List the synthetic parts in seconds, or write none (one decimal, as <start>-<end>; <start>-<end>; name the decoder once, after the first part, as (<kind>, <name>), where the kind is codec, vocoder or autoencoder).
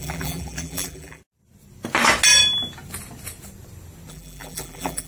0.0-1.2 (vocoder, BigVGAN v2); 4.1-5.1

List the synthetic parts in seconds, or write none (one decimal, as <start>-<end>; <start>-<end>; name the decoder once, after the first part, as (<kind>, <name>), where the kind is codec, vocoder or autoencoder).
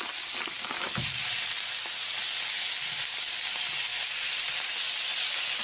4.0-4.7 (vocoder, BigVGAN v2)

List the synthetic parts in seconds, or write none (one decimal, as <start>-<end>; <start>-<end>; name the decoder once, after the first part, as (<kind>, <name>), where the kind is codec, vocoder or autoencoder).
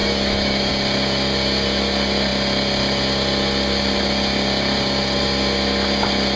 0.0-0.7 (autoencoder, DAC-VAE)